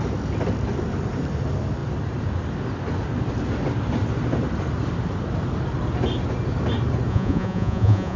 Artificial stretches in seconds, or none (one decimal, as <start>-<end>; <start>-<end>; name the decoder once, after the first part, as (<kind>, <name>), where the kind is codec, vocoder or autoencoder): 7.1-8.2 (vocoder, Vocos)